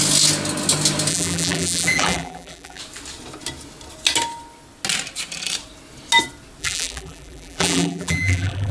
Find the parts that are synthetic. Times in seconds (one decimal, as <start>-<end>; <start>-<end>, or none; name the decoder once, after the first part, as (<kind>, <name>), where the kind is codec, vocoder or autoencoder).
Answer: 1.1-2.8 (vocoder, BigVGAN v2); 6.6-8.7